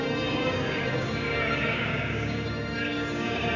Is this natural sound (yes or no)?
no